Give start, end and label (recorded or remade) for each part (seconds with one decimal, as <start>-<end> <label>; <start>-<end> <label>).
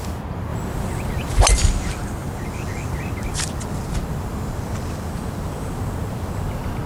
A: 0.0-6.9 recorded